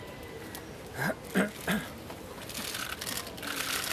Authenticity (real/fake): real